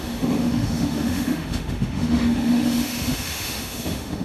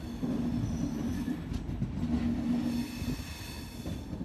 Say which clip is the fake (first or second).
first